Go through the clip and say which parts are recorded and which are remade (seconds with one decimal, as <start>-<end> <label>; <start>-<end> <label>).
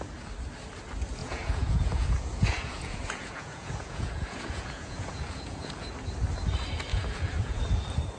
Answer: 0.0-1.2 recorded; 1.2-5.7 remade; 5.7-6.9 recorded; 6.9-7.6 remade; 7.6-8.2 recorded